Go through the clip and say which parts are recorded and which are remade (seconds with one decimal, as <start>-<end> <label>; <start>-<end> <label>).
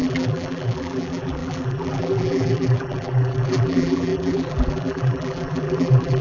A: 0.0-6.2 remade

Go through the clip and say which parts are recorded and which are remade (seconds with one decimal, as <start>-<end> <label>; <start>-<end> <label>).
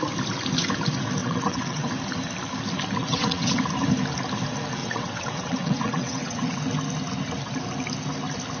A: 0.0-1.2 recorded; 1.2-1.9 remade; 1.9-3.0 recorded; 3.0-3.6 remade; 3.6-4.8 recorded; 4.8-6.6 remade; 6.6-8.6 recorded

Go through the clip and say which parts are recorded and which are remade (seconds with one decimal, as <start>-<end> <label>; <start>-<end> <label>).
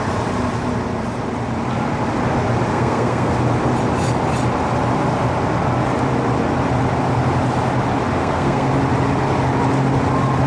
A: 0.0-2.7 recorded; 2.7-3.3 remade; 3.3-8.2 recorded; 8.2-8.7 remade; 8.7-10.5 recorded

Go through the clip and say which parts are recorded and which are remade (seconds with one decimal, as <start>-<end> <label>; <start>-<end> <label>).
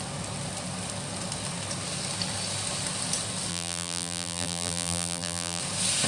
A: 0.0-3.5 recorded; 3.5-5.6 remade; 5.6-6.1 recorded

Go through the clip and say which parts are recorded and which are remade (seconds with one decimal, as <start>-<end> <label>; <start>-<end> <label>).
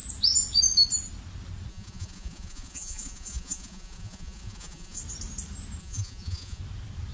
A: 0.0-1.7 recorded; 1.7-5.0 remade; 5.0-5.8 recorded; 5.8-6.6 remade; 6.6-7.1 recorded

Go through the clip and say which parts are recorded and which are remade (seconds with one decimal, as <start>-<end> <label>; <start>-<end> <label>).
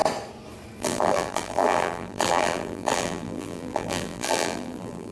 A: 0.0-0.8 recorded; 0.8-5.1 remade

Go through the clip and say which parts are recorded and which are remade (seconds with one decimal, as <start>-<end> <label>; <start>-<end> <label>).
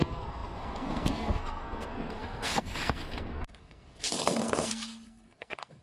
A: 0.0-5.8 remade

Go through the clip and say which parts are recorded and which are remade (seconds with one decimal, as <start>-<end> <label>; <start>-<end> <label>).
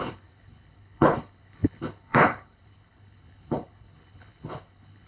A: 0.0-5.1 remade